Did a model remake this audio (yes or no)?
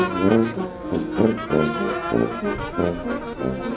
no